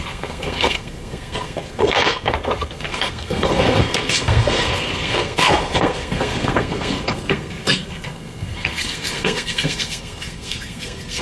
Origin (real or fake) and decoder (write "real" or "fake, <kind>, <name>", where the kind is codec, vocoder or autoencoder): fake, codec, SNAC